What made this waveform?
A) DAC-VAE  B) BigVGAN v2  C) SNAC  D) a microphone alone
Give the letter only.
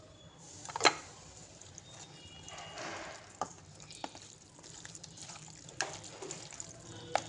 D